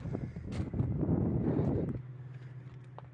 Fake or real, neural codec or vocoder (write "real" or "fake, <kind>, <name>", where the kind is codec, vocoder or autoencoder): real